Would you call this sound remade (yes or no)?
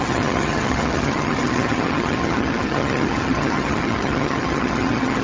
yes